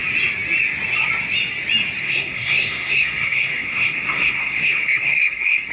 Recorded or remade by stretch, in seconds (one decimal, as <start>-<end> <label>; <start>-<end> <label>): 0.0-2.0 recorded; 2.0-5.7 remade